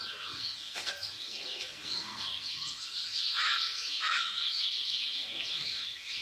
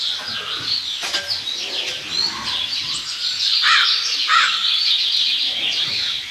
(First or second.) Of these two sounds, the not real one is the first